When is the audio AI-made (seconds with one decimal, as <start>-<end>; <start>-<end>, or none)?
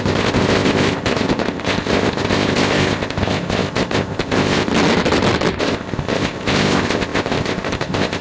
0.0-4.7; 5.6-8.2